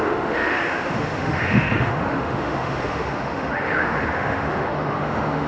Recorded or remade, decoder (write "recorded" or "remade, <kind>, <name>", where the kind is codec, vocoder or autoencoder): remade, autoencoder, DAC-VAE